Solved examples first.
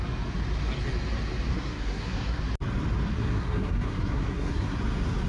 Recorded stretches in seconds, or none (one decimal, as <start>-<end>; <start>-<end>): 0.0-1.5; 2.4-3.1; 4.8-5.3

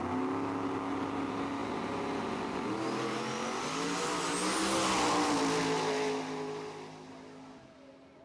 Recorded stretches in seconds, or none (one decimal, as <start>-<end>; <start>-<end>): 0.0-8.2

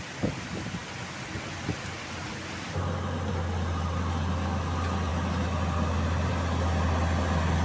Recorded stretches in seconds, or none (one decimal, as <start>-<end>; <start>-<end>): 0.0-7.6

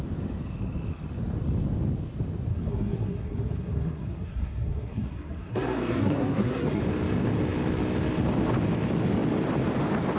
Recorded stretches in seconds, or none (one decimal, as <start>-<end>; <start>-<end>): 0.0-2.5; 6.8-10.2

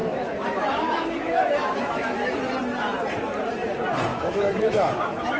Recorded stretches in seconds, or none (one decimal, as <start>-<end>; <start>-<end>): 2.3-4.1

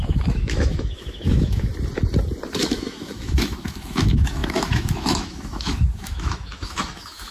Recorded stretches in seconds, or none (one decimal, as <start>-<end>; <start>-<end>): 1.7-2.6

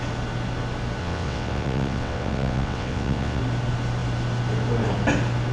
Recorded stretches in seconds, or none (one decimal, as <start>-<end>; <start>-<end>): 0.0-1.0; 3.4-5.5

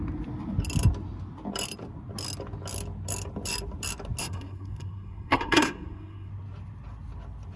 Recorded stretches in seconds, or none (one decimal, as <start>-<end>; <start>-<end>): 0.0-4.2; 6.3-7.6